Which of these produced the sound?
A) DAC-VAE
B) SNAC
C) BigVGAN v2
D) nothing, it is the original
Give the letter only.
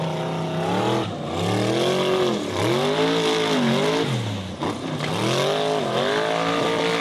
D